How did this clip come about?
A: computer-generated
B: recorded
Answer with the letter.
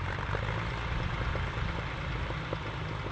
B